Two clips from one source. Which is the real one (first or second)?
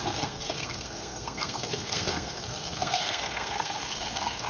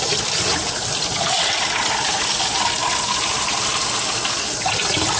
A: second